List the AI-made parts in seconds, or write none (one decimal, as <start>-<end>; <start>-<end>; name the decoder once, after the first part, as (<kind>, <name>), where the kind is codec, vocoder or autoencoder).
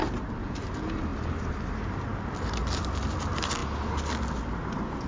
none